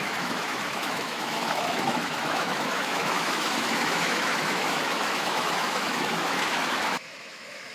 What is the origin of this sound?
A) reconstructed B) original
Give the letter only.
A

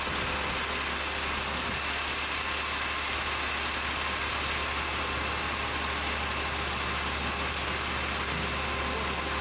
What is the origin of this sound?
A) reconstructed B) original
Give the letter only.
B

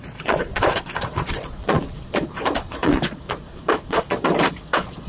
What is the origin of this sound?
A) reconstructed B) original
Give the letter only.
A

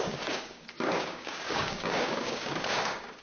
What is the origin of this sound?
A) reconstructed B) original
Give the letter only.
A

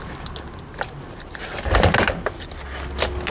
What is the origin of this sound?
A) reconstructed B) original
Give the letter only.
B